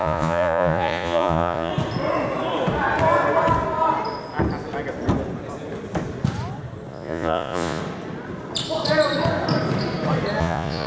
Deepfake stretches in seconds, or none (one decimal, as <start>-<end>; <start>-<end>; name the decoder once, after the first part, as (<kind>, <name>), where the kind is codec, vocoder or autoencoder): 0.0-1.7 (vocoder, Vocos); 6.9-7.8; 10.4-10.9